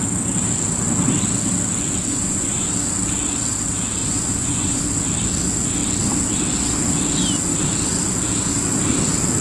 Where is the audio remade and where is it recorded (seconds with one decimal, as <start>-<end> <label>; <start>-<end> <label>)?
0.0-2.1 recorded; 2.1-2.7 remade; 2.7-4.0 recorded; 4.0-4.8 remade; 4.8-9.4 recorded